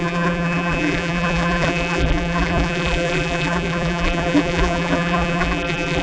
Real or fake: fake